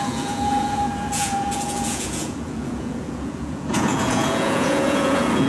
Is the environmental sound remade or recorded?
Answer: remade